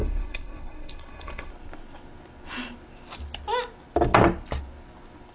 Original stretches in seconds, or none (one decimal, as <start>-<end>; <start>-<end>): 1.5-5.3

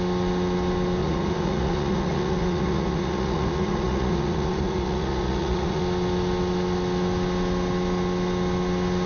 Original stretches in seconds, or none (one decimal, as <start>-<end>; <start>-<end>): 0.0-1.0; 5.8-9.1

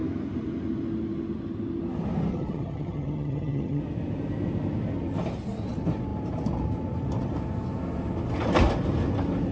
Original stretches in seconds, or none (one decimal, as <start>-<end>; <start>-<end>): 0.0-2.3; 3.8-9.5

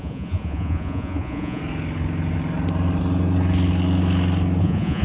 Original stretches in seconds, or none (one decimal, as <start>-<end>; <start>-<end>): 1.6-4.6

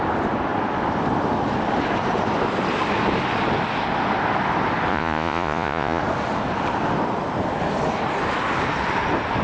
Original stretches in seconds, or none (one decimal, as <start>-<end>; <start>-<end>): 0.0-4.9; 6.0-9.4

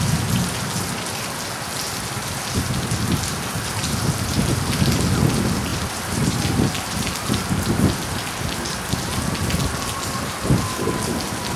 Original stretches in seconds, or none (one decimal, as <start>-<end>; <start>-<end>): 0.0-5.7; 6.5-11.6

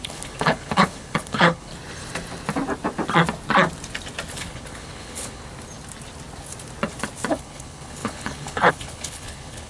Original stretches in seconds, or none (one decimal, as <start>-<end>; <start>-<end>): 1.7-4.3; 5.4-7.3